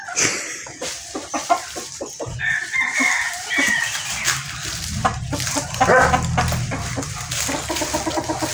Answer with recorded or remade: recorded